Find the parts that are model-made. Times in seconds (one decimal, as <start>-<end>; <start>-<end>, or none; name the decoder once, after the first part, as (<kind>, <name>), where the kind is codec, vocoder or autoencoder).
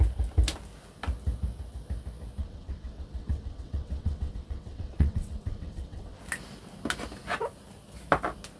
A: 2.4-6.2 (vocoder, WaveNeXt)